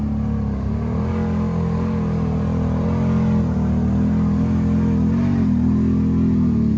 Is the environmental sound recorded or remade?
recorded